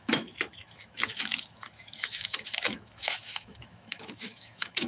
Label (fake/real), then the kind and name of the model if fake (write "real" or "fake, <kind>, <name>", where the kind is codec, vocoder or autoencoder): fake, autoencoder, DAC-VAE